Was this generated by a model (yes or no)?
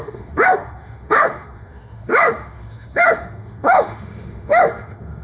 yes